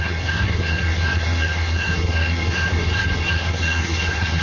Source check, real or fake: fake